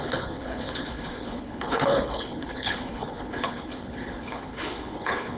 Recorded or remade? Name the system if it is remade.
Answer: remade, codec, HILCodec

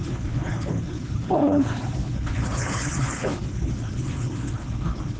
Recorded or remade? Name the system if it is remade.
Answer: remade, codec, HILCodec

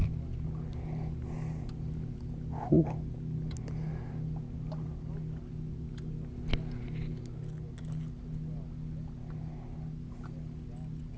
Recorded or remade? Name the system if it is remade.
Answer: recorded